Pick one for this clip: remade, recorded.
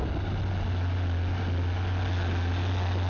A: recorded